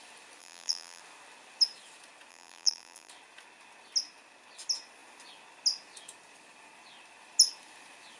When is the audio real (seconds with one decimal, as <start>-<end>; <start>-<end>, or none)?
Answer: 0.0-0.4; 1.0-2.3; 3.1-8.2

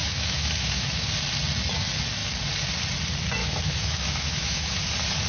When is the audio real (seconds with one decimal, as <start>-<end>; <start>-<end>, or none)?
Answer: 1.1-3.4; 4.8-5.3

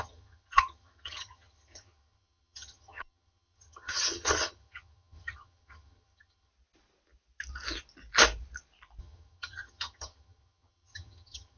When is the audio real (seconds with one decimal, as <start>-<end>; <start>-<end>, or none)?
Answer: 6.5-9.0

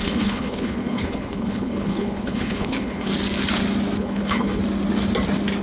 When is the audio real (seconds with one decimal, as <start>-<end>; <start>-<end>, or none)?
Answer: 3.1-4.0; 4.6-5.6

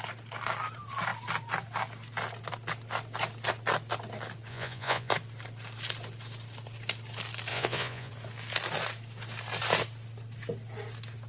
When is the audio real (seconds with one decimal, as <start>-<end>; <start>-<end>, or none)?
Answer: 0.0-4.5; 5.1-7.5; 8.1-11.3

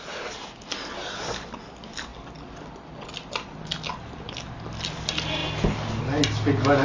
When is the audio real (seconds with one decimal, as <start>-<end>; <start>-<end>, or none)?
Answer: 0.0-6.8

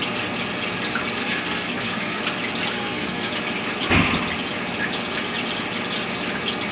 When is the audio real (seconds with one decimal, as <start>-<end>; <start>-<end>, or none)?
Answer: 0.0-1.2; 2.2-2.7; 3.3-6.7